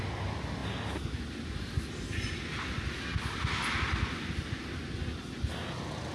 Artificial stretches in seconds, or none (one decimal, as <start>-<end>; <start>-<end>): none